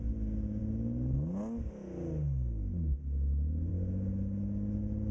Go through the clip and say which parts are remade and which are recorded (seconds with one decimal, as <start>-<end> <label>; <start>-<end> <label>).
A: 0.0-5.1 recorded